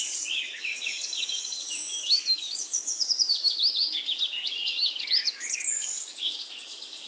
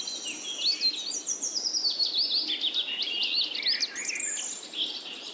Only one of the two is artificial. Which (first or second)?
first